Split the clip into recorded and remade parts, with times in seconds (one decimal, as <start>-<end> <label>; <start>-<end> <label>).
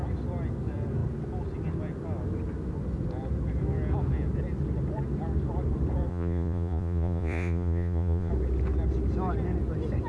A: 0.0-6.1 recorded; 6.1-8.3 remade; 8.3-10.1 recorded